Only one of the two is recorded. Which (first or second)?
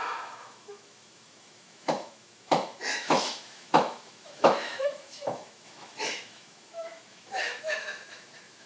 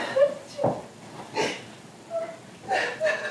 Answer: second